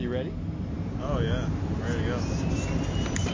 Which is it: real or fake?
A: real